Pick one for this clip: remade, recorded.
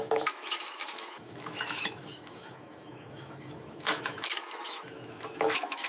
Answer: remade